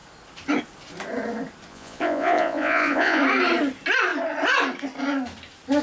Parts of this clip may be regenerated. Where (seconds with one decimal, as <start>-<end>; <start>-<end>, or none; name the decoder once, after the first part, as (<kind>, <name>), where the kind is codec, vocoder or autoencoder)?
1.7-3.2 (vocoder, Vocos)

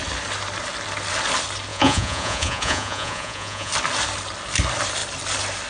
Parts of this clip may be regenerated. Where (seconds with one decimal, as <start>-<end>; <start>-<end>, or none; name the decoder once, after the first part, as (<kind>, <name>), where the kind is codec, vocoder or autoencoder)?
1.7-3.7 (vocoder, Vocos)

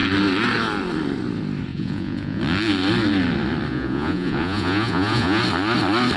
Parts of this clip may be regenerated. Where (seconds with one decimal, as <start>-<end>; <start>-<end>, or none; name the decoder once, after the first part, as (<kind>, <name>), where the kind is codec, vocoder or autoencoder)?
1.7-2.4 (vocoder, Vocos); 3.7-5.4

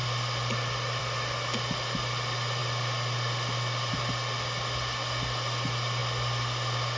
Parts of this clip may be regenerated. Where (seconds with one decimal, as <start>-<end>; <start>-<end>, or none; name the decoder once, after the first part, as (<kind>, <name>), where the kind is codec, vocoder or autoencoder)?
none

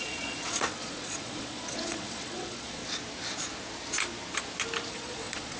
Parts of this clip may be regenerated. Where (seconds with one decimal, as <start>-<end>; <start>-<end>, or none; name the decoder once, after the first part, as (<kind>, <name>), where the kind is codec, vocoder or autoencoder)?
0.0-2.8 (vocoder, Vocos); 4.9-5.6